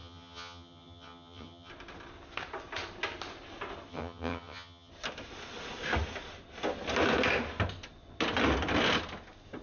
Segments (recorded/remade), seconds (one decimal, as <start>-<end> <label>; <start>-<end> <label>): 0.0-1.7 remade; 1.7-3.9 recorded; 3.9-4.9 remade; 4.9-9.6 recorded